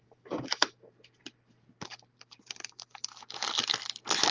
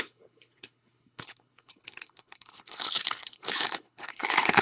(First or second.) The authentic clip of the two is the first